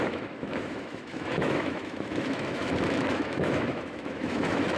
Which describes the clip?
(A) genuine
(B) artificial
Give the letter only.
B